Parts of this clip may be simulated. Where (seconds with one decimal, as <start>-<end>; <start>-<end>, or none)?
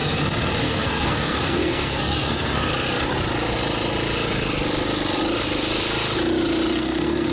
0.6-2.7; 6.7-7.3